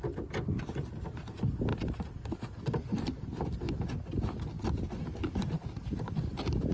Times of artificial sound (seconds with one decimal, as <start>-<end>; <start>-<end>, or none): none